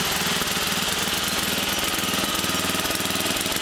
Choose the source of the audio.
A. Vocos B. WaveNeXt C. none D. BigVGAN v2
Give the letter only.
C